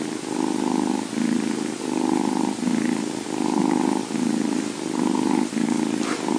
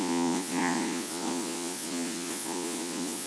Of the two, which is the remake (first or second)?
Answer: second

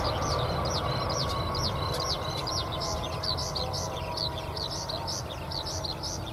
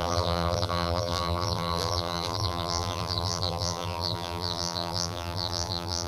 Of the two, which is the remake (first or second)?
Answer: second